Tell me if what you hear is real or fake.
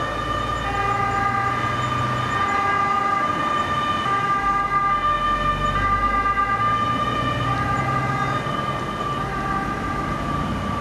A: real